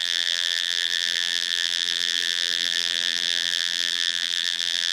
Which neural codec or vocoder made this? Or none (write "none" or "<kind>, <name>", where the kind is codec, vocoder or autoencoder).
vocoder, BigVGAN v2